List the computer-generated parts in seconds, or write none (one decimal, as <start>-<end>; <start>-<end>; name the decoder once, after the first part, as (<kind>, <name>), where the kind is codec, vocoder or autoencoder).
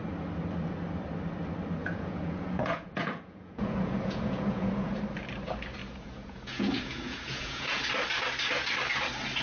1.8-5.0 (vocoder, Vocos); 5.8-7.8